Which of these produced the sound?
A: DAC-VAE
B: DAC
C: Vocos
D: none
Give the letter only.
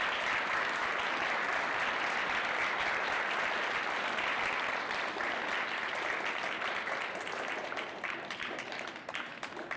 D